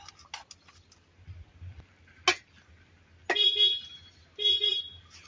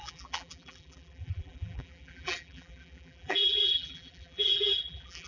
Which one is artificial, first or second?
second